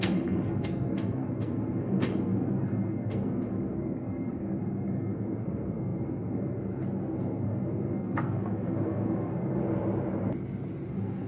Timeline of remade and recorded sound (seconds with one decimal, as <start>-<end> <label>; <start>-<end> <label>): 0.0-9.6 remade; 9.6-10.9 recorded; 10.9-11.3 remade